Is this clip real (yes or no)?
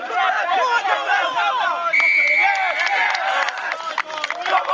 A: yes